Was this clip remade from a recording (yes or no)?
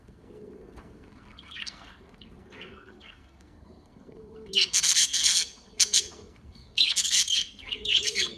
yes